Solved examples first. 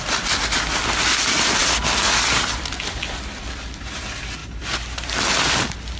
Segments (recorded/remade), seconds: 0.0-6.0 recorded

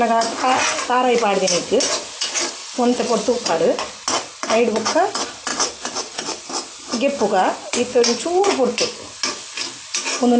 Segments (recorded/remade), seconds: 0.0-2.6 recorded; 2.6-3.5 remade; 3.5-5.5 recorded; 5.5-6.4 remade; 6.4-7.9 recorded; 7.9-8.4 remade; 8.4-10.4 recorded